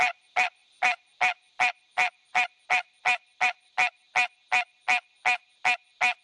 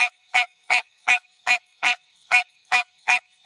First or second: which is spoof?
second